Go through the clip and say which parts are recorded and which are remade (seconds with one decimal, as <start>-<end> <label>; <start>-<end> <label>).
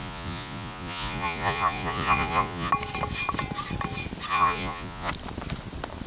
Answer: 0.0-2.7 remade; 2.7-4.3 recorded; 4.3-5.1 remade; 5.1-6.1 recorded